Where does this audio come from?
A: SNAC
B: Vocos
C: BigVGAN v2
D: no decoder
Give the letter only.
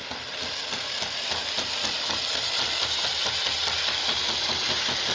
D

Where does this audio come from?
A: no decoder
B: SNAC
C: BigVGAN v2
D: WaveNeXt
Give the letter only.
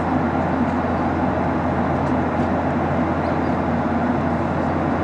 A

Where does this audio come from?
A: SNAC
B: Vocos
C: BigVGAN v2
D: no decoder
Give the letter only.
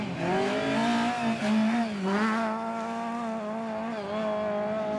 D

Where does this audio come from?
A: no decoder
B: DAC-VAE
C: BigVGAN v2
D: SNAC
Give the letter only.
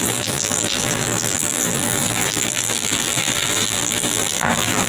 C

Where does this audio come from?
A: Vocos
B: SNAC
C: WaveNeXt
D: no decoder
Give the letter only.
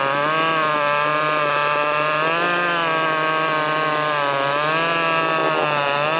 D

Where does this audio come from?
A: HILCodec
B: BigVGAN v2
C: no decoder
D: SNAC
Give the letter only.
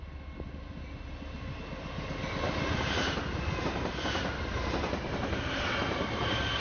C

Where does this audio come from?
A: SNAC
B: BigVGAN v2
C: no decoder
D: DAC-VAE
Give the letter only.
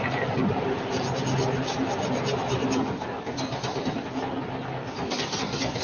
C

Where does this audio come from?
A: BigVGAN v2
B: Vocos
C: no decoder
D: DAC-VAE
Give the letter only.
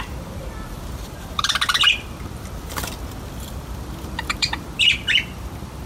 A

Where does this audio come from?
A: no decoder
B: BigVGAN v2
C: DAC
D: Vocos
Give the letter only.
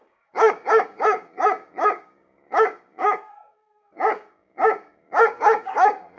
C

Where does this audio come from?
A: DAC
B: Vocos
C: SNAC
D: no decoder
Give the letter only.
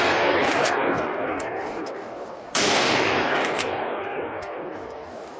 A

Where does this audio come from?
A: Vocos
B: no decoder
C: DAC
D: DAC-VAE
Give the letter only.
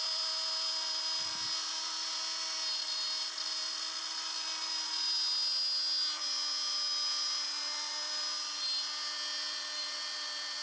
B